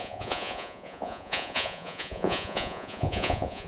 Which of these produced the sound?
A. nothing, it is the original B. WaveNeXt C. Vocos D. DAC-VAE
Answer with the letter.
C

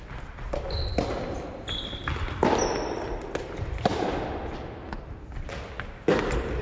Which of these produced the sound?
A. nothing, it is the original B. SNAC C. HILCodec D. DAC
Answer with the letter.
A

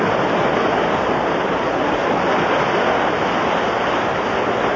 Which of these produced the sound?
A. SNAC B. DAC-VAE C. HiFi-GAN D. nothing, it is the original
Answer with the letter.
D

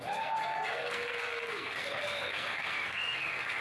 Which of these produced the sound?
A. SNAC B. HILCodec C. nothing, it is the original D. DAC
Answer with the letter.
A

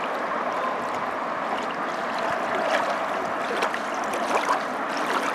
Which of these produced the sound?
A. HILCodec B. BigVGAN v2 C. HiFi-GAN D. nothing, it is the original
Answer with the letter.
D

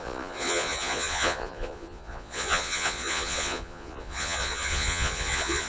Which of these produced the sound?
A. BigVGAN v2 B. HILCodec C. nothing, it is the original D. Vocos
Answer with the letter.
D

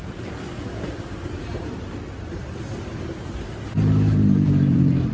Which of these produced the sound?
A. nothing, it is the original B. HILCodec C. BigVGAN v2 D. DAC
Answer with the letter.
C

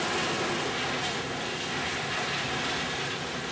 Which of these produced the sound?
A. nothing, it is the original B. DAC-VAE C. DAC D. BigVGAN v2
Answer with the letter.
A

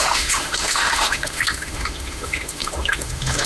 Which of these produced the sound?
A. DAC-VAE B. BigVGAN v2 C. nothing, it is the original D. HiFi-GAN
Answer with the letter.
A